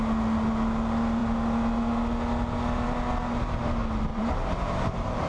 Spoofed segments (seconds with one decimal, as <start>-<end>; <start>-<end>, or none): 4.1-5.3